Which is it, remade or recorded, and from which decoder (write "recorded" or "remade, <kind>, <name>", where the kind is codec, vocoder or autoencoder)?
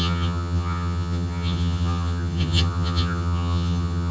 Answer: remade, vocoder, HiFi-GAN